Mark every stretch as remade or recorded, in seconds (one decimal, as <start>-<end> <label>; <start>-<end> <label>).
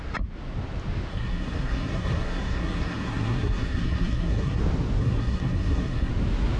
0.0-1.1 recorded; 1.1-4.6 remade; 4.6-5.0 recorded; 5.0-6.1 remade; 6.1-6.6 recorded